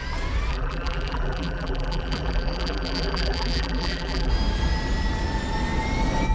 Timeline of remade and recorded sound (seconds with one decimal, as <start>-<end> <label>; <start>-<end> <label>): 0.0-0.5 recorded; 0.5-4.3 remade; 4.3-6.3 recorded